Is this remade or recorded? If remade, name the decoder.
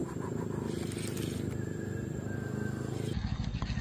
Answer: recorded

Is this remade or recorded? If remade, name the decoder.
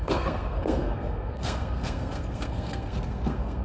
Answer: remade, codec, SNAC